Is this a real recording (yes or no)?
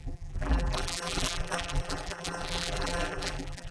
no